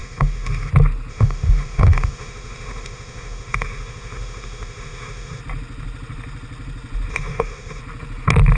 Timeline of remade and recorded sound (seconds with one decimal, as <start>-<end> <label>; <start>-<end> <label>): 0.0-0.7 remade; 0.7-1.1 recorded; 1.1-5.4 remade; 5.4-7.1 recorded; 7.1-7.8 remade; 7.8-8.6 recorded